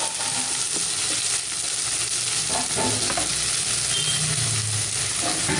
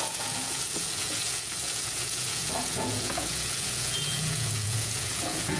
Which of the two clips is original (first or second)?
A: first